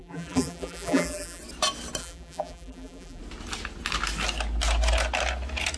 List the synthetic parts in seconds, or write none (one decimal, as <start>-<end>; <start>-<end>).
0.0-1.4; 2.0-3.2